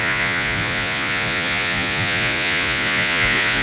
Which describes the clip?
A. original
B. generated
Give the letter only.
B